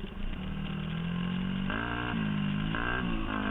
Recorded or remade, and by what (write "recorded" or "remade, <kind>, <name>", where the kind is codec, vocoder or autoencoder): recorded